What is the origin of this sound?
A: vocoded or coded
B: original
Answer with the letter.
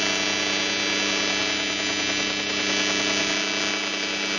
B